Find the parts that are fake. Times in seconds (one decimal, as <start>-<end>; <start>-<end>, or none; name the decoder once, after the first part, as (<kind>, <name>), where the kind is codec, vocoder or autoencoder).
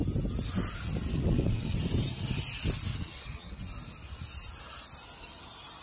1.1-1.8 (vocoder, WaveNeXt); 2.9-3.6